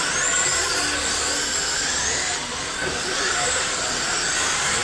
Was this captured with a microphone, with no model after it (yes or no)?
yes